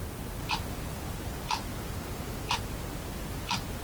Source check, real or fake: real